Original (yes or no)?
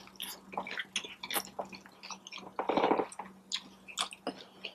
yes